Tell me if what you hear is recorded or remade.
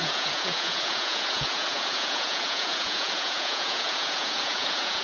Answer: remade